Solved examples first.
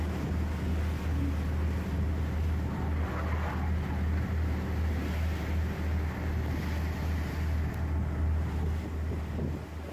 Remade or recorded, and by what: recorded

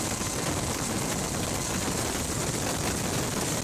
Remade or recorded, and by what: recorded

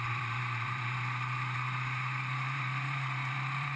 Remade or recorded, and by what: remade, vocoder, BigVGAN v2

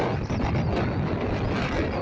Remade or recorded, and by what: recorded